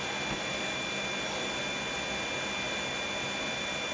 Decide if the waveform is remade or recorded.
recorded